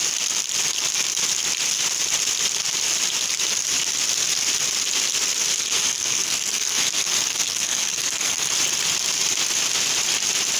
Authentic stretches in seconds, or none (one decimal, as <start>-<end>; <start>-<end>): 0.0-5.5; 8.5-10.6